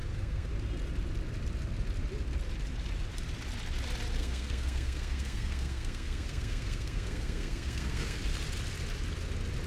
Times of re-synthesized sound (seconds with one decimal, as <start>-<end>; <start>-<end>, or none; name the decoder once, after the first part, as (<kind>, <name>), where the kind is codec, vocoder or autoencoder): 0.0-0.5 (codec, SNAC); 4.2-8.2